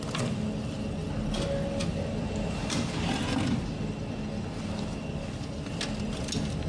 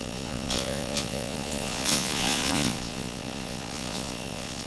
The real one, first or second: first